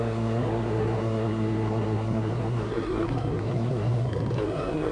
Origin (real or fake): fake